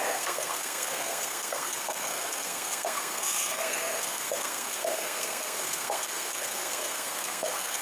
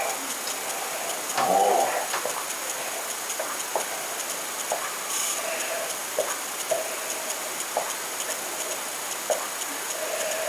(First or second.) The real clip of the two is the second